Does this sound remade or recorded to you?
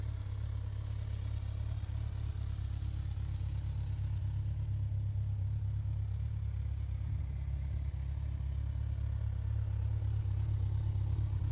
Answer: recorded